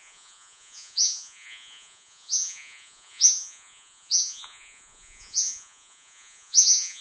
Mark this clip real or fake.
fake